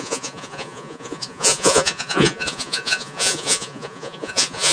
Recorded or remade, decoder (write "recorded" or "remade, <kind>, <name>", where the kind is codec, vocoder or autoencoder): remade, vocoder, Vocos